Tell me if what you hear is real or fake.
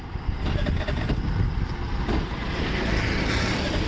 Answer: real